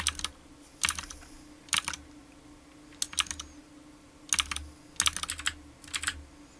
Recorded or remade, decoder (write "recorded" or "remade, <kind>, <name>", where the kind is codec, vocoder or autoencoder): recorded